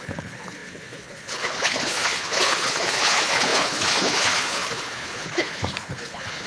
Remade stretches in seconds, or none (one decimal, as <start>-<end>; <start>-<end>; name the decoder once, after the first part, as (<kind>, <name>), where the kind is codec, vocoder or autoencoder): 0.0-6.5 (codec, HILCodec)